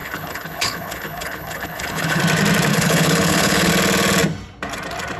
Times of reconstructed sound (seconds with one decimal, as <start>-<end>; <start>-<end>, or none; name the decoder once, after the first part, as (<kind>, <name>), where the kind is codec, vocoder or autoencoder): 0.0-2.2 (codec, HILCodec); 2.7-3.7